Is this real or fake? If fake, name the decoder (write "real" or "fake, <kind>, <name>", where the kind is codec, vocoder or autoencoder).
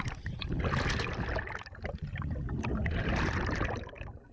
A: real